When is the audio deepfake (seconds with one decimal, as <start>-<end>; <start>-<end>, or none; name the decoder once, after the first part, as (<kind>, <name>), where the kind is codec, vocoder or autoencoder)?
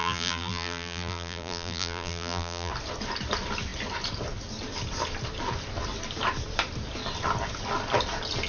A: 0.0-2.7 (vocoder, BigVGAN v2)